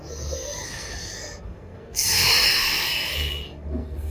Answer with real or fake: fake